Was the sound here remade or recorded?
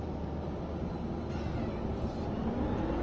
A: recorded